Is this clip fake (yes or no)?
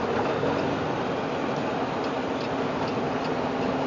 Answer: no